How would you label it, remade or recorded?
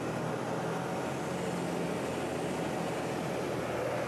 recorded